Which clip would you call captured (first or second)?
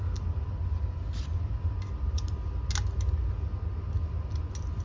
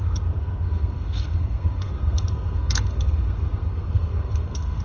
first